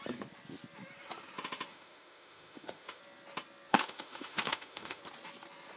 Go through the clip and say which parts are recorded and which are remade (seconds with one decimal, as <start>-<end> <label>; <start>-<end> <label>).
0.0-1.7 recorded; 1.7-3.0 remade; 3.0-3.7 recorded; 3.7-5.0 remade; 5.0-5.8 recorded